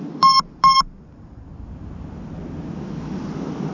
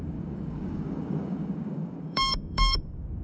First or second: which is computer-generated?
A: second